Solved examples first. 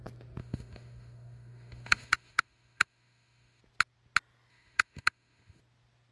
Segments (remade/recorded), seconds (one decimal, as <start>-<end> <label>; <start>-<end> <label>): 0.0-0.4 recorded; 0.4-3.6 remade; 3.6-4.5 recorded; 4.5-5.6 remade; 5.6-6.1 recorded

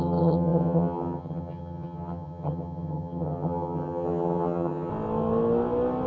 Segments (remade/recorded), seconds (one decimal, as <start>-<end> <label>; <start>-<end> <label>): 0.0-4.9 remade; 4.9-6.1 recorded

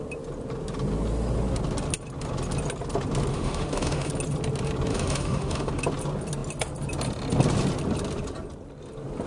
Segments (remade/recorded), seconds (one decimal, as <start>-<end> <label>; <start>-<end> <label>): 0.0-3.3 recorded; 3.3-4.1 remade; 4.1-4.9 recorded; 4.9-5.7 remade; 5.7-9.3 recorded

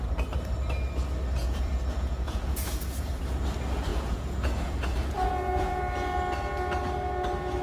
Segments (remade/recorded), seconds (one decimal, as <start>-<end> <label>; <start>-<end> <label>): 0.0-1.4 recorded; 1.4-3.2 remade; 3.2-3.9 recorded; 3.9-5.8 remade; 5.8-7.6 recorded

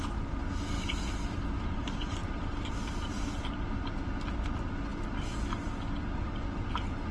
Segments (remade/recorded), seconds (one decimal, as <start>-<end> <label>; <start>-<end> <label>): 0.0-7.1 recorded

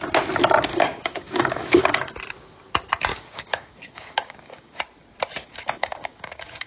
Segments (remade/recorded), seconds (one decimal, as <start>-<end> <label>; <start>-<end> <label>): 0.0-0.7 recorded; 0.7-1.8 remade; 1.8-3.1 recorded; 3.1-4.8 remade; 4.8-5.4 recorded; 5.4-6.7 remade

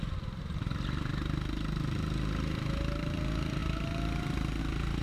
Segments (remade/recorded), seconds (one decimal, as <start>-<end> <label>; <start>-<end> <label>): 0.0-5.0 recorded